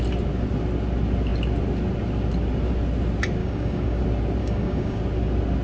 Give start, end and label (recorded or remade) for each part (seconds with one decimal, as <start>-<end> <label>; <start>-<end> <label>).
0.0-3.4 recorded; 3.4-4.0 remade; 4.0-4.4 recorded; 4.4-5.0 remade; 5.0-5.6 recorded